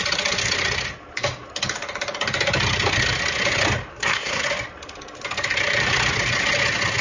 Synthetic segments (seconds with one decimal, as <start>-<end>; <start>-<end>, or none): 3.9-4.4